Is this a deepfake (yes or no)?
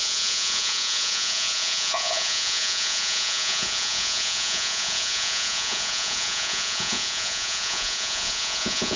yes